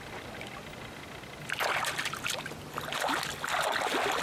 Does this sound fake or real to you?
real